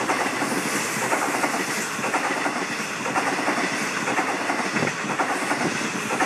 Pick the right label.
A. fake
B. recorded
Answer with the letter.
B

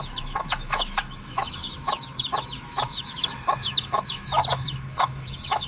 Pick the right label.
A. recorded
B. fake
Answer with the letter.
B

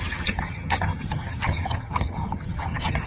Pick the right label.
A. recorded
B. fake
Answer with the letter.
B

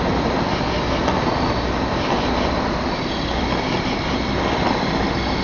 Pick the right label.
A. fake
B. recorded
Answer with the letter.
B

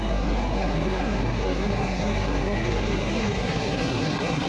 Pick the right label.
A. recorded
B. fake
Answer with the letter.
B